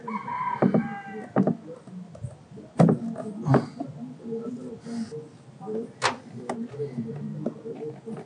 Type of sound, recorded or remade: recorded